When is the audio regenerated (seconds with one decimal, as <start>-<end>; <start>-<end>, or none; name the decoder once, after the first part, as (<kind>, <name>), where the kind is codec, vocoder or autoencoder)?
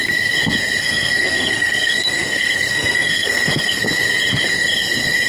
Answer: 0.8-3.8 (codec, SNAC)